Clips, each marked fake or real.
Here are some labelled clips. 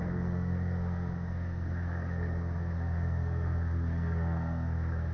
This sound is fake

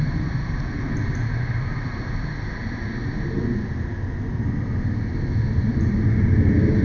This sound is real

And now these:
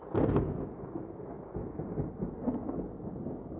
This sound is real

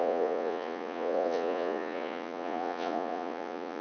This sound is fake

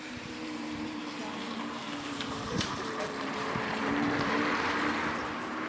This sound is fake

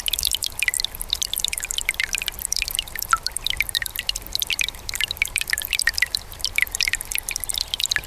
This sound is real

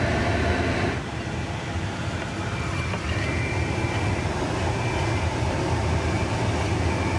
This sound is real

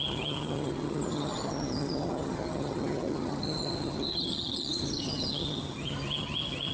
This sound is fake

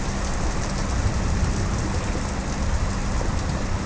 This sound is real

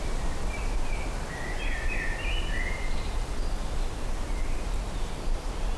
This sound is real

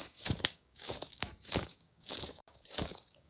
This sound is fake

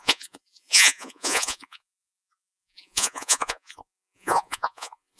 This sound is fake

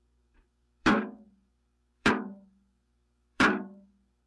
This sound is fake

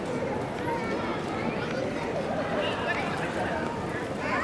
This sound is real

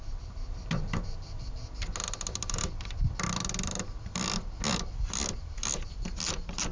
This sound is real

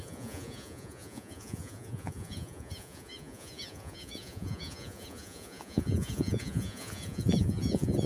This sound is fake